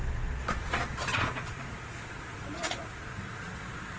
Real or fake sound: fake